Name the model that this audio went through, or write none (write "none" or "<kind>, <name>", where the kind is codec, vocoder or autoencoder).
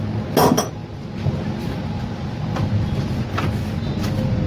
none